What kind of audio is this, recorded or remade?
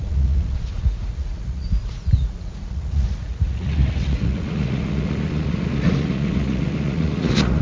remade